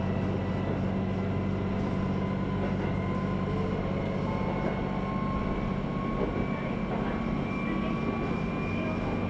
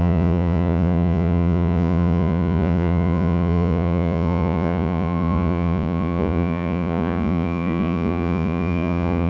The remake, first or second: second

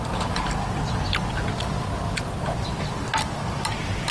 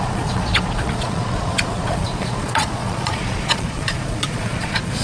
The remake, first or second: second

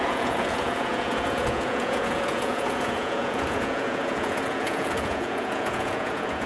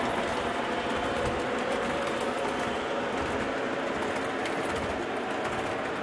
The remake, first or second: first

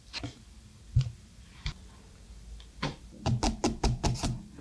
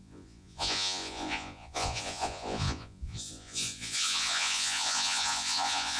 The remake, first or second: second